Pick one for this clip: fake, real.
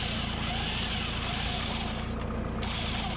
real